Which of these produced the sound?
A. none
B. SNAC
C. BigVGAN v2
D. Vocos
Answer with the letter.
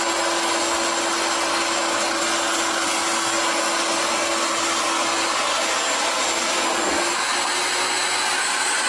A